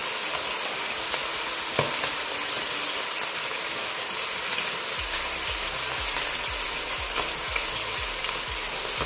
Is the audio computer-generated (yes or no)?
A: no